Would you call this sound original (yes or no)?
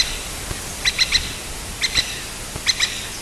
yes